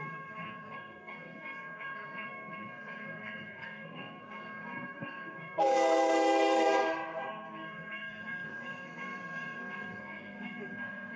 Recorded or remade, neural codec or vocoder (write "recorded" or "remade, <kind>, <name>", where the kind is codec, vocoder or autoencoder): remade, codec, SNAC